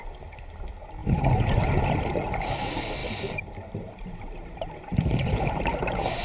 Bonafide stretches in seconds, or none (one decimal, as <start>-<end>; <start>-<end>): 0.0-3.0